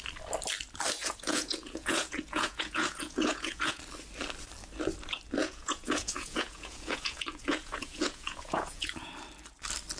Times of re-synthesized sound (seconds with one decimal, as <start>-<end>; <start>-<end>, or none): 1.0-3.8; 5.4-9.1

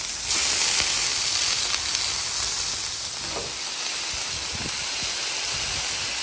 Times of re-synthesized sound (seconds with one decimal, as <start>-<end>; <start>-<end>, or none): none

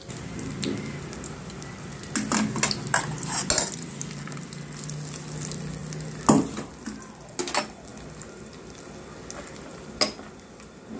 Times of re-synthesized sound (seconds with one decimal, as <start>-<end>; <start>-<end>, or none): none

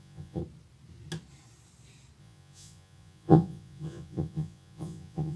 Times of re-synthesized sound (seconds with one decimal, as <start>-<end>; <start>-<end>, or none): 0.0-0.4; 2.2-5.4

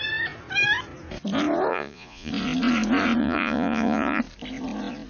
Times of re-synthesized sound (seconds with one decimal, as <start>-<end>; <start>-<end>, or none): 1.7-2.3; 3.2-4.2

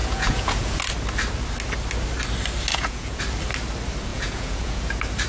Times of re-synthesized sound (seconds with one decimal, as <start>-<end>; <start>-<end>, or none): 0.0-0.8; 2.7-3.2; 4.1-4.8

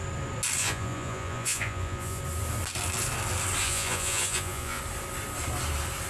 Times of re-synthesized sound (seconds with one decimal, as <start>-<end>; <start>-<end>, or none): 0.6-2.2; 3.6-4.8